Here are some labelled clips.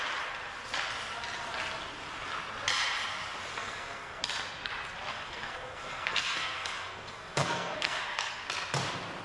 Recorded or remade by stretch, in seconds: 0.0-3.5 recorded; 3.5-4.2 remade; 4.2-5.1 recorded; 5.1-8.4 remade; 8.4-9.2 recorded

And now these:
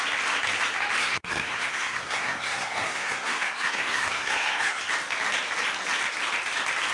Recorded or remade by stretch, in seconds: 0.0-1.0 recorded; 1.0-4.8 remade; 4.8-6.9 recorded

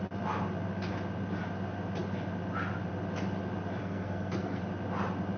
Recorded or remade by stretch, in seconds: 0.0-3.8 recorded; 3.8-4.6 remade; 4.6-5.4 recorded

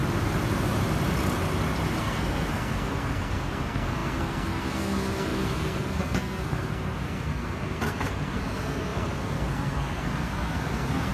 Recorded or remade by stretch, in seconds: 0.0-2.0 recorded; 2.0-11.1 remade

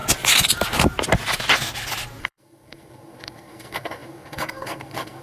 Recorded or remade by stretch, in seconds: 0.0-2.2 recorded; 2.2-5.2 remade

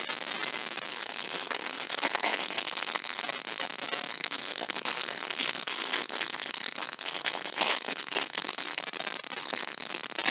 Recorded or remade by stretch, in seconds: 0.0-0.9 recorded; 0.9-3.2 remade; 3.2-4.1 recorded; 4.1-8.8 remade; 8.8-9.4 recorded; 9.4-9.9 remade; 9.9-10.3 recorded

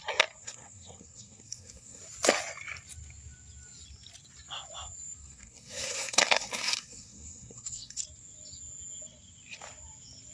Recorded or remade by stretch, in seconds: 0.0-0.4 recorded; 0.4-2.0 remade; 2.0-5.2 recorded; 5.2-8.0 remade; 8.0-10.3 recorded